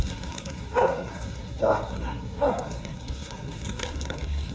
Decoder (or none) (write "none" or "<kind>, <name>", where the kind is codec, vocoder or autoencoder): codec, SNAC